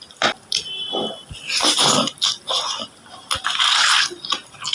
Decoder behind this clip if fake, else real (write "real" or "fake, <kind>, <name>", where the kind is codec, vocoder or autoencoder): real